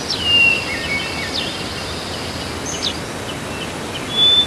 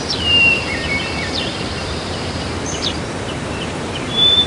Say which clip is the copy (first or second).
second